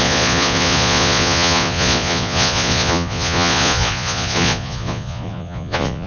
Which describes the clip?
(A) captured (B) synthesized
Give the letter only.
B